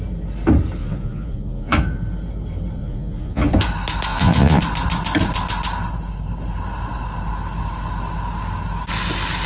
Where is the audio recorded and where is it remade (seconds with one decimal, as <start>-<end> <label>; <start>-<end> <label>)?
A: 0.0-0.8 recorded; 0.8-2.0 remade; 2.0-2.8 recorded; 2.8-3.5 remade; 3.5-4.1 recorded; 4.1-4.6 remade; 4.6-9.5 recorded